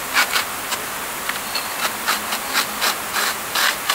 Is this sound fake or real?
real